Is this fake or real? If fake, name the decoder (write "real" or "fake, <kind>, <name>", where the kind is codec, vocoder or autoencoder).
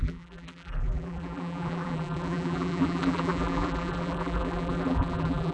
fake, vocoder, BigVGAN v2